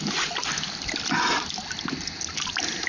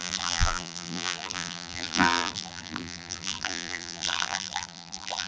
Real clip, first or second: first